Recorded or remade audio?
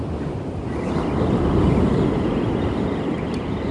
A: recorded